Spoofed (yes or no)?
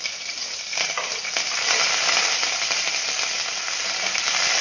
no